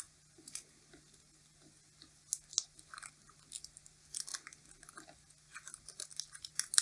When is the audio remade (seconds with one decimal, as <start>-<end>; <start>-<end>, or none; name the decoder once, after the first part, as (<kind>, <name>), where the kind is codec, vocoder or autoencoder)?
none